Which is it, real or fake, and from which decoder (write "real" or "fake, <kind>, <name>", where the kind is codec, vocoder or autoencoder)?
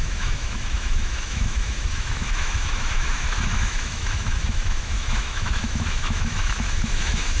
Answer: fake, autoencoder, DAC-VAE